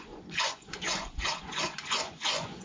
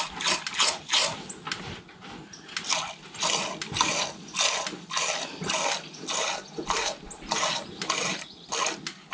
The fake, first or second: first